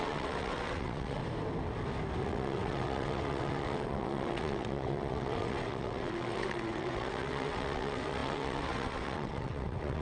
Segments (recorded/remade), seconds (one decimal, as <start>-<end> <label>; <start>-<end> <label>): 0.0-1.2 remade; 1.2-2.2 recorded; 2.2-10.0 remade